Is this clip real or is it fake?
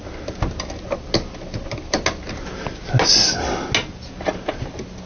real